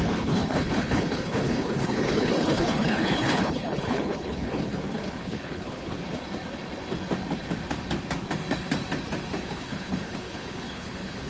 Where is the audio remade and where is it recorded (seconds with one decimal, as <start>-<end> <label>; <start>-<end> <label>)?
0.0-6.0 remade; 6.0-9.5 recorded; 9.5-11.3 remade